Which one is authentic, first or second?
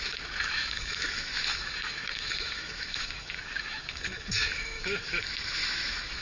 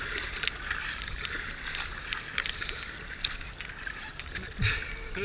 second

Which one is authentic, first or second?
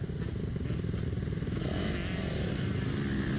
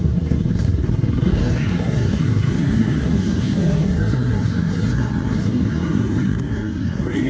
first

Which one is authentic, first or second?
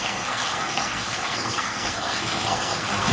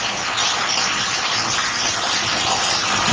second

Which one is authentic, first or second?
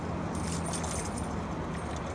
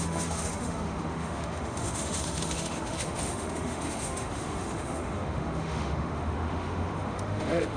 first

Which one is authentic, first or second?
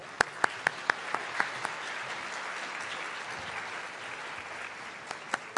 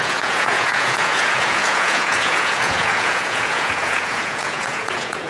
first